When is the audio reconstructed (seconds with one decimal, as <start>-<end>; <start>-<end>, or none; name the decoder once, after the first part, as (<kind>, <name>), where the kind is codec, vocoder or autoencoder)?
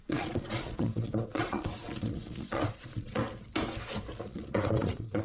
0.0-3.2 (vocoder, Vocos); 4.2-5.2